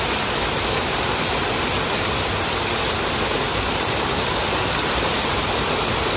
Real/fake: real